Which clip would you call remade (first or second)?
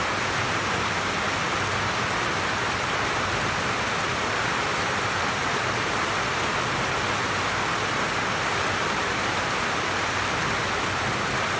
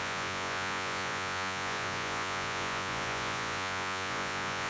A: second